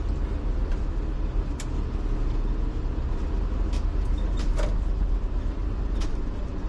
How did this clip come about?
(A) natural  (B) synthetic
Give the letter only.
A